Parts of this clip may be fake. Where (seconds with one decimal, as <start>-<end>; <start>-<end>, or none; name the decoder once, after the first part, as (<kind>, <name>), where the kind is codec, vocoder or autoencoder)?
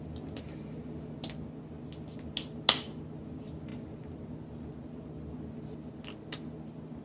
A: none